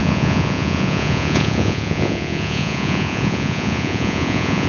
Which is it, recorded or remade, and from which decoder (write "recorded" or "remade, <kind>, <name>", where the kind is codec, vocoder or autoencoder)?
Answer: remade, vocoder, Vocos